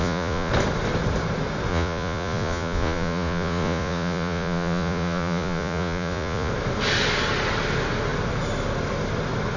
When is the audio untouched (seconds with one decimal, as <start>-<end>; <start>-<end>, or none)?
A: 0.5-1.7; 6.5-9.6

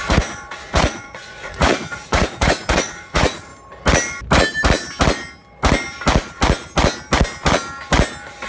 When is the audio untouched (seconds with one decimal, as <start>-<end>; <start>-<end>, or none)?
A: 3.5-8.5

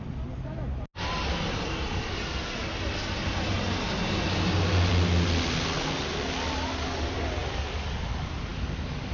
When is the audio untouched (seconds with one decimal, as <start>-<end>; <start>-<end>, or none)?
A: 0.0-9.1

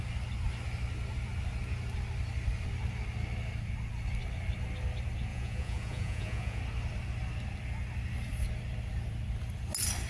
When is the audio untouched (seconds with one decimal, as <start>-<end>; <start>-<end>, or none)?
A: 0.0-5.3; 6.6-10.1

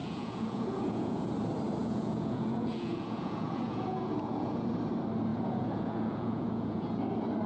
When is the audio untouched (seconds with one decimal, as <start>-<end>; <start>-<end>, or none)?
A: 1.3-1.8; 4.7-5.3; 7.0-7.5

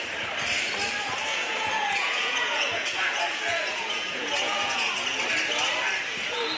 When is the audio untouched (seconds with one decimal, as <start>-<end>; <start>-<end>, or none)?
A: 0.0-1.3; 4.9-6.6